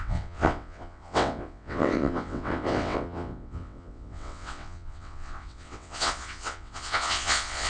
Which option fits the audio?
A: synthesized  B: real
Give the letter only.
A